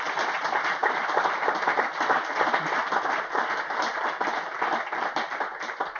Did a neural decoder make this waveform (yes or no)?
no